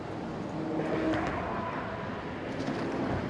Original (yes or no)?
yes